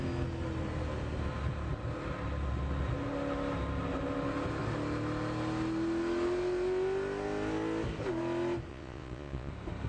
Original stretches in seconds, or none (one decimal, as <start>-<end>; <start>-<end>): 0.0-8.7; 9.5-9.9